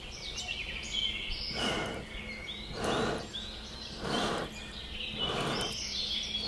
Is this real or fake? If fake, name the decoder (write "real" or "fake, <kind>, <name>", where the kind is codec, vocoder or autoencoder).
real